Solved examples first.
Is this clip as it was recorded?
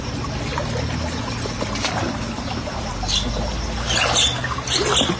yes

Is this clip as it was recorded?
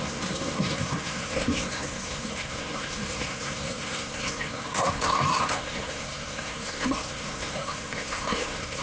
no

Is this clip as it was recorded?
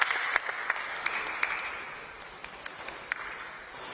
yes